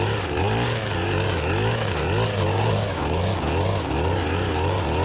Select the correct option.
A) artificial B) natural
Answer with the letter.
B